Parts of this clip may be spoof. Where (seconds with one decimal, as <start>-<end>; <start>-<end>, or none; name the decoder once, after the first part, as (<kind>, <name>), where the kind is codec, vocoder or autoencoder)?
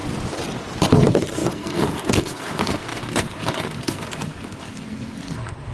0.9-5.7 (codec, SNAC)